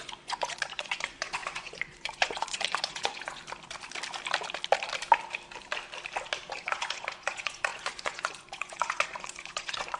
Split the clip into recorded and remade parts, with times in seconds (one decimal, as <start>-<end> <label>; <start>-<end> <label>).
0.0-3.4 remade; 3.4-6.6 recorded; 6.6-10.0 remade